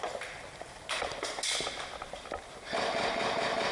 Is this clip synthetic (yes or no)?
no